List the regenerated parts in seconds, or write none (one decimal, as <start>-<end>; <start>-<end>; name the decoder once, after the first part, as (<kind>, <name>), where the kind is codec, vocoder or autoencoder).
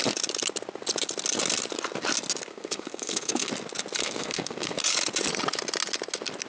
2.5-3.5 (codec, SNAC); 4.0-4.8